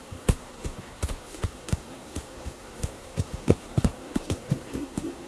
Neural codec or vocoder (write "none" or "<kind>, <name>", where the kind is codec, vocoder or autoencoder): codec, SNAC